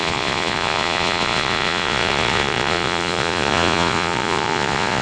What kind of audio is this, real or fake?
fake